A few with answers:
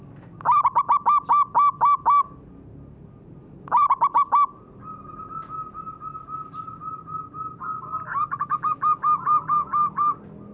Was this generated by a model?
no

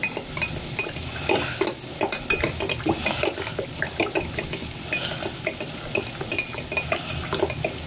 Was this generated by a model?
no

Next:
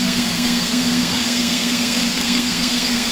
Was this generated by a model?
yes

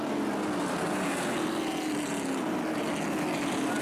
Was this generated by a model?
no